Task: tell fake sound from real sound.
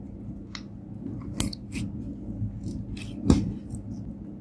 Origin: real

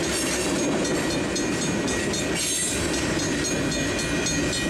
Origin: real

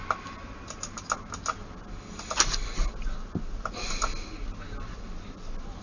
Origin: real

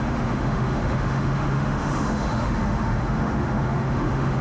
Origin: fake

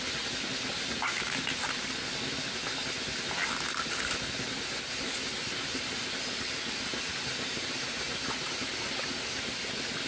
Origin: real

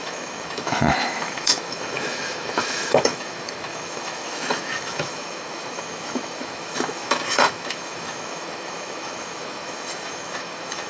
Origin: fake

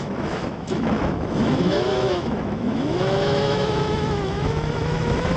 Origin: fake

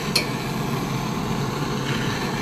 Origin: real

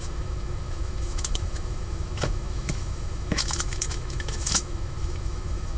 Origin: fake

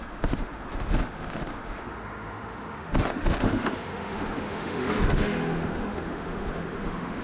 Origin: fake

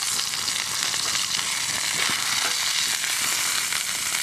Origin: real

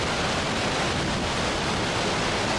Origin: real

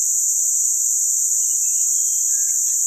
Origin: real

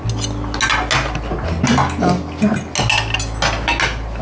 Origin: real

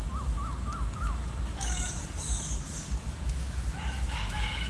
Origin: fake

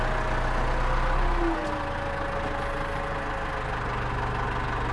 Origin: real